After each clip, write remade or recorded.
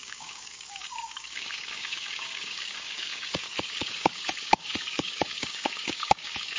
remade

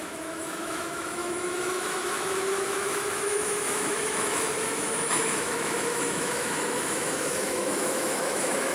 remade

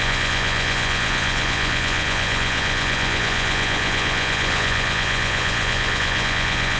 remade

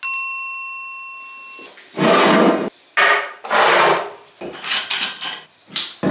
recorded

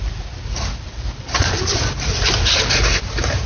recorded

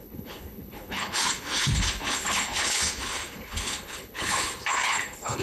remade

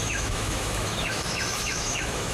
remade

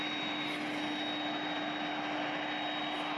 recorded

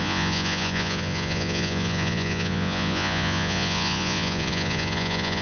remade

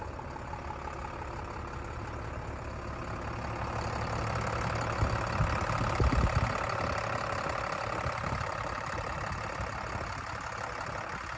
recorded